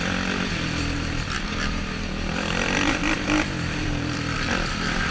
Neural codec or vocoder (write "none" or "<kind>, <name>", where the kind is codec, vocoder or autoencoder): vocoder, BigVGAN v2